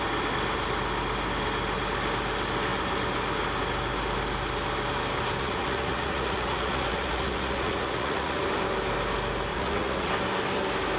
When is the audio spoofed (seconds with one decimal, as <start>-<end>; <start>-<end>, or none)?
5.4-8.4; 9.5-10.1